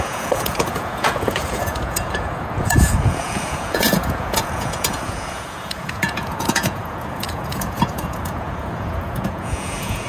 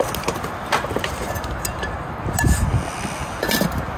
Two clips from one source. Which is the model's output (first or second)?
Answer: first